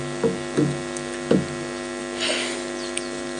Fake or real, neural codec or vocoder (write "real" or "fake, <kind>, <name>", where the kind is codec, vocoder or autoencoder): real